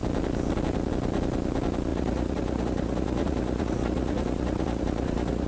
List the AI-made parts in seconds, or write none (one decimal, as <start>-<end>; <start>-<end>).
1.9-5.5